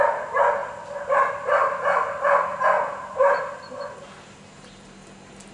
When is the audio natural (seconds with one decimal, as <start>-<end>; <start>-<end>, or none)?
0.0-5.5